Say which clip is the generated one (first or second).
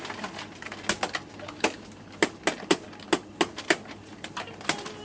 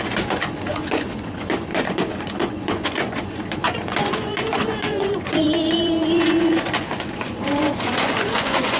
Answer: second